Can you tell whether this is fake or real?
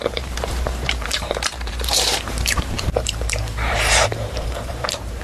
fake